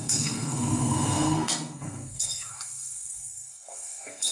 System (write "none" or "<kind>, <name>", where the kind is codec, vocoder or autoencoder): codec, SNAC